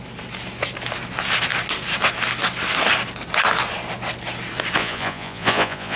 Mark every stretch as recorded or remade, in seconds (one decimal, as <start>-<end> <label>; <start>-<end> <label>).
0.0-4.8 recorded; 4.8-6.0 remade